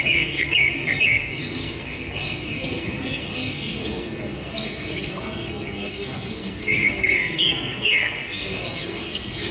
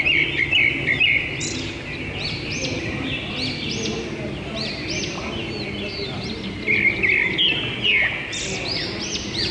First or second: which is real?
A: second